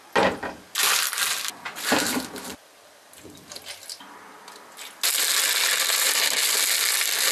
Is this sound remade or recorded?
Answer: recorded